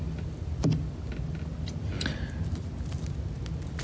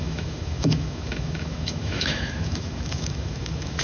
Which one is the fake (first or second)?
second